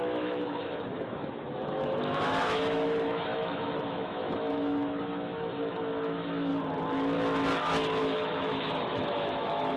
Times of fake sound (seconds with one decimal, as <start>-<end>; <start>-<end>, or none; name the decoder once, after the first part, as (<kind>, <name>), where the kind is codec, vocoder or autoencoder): 0.0-6.5 (autoencoder, DAC-VAE); 8.0-9.8